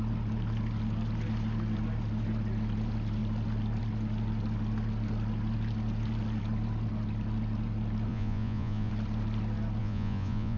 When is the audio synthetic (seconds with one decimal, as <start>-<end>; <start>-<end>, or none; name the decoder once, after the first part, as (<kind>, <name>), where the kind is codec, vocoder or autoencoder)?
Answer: 8.1-8.9 (vocoder, Vocos); 9.8-10.6